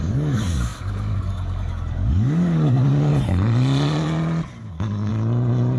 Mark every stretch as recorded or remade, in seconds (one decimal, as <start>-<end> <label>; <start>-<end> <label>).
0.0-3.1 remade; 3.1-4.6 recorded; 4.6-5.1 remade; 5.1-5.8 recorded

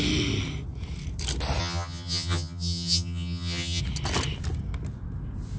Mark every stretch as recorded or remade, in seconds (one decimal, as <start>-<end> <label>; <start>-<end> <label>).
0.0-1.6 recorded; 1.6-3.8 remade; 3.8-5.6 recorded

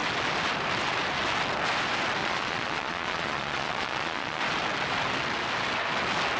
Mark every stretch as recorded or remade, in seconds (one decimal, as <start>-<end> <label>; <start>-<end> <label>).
0.0-2.2 recorded; 2.2-4.4 remade; 4.4-6.4 recorded

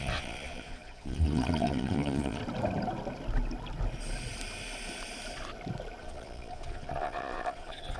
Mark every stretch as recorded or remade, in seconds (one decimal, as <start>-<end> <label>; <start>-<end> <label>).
0.0-2.4 remade; 2.4-6.0 recorded; 6.0-8.0 remade